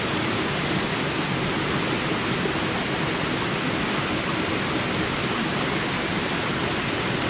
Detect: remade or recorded recorded